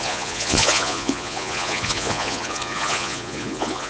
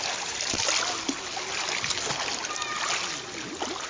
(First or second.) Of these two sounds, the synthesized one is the first